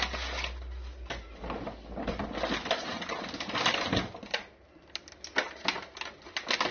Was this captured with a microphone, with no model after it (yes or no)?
yes